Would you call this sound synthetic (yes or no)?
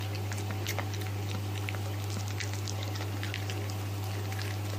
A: no